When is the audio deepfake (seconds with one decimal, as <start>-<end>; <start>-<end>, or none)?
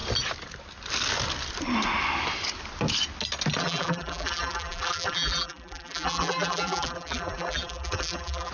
3.6-8.5